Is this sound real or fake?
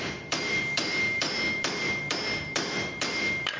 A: fake